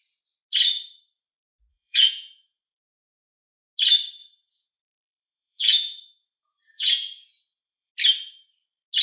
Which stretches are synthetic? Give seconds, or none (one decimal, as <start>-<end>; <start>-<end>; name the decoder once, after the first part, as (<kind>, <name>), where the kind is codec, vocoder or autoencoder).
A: 1.7-2.8 (vocoder, Vocos); 4.2-7.9